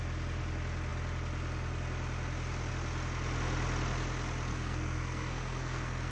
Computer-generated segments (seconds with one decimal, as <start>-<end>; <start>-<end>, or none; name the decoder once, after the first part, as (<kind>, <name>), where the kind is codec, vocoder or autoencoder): 4.5-6.1 (codec, SNAC)